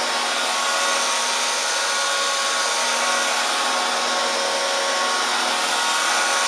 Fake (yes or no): no